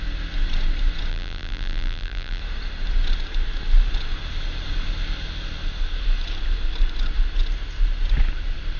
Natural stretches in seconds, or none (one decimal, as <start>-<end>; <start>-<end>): 0.0-1.1; 2.4-8.8